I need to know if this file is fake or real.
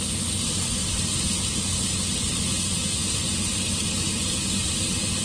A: real